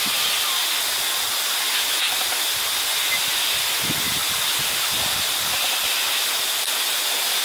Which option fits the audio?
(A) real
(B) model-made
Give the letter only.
A